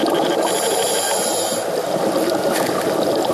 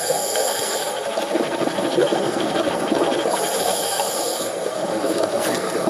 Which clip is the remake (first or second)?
second